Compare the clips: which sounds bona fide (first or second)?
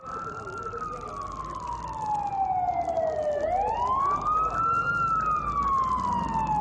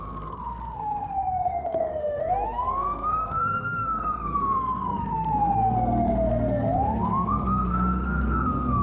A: first